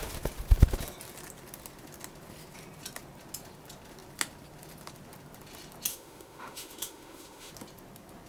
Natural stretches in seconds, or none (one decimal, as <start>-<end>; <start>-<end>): 0.0-5.9; 7.5-8.3